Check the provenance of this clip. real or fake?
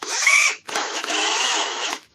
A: fake